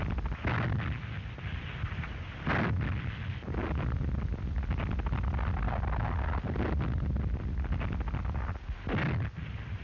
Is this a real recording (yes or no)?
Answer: yes